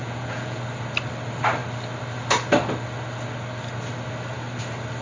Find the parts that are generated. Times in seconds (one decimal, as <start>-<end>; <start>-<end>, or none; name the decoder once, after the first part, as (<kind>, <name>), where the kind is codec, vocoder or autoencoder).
0.0-0.6 (vocoder, Vocos)